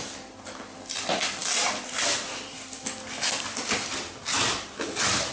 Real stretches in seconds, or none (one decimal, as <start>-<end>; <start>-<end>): 0.0-5.3